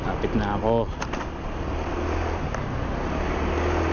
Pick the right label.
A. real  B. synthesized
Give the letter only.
A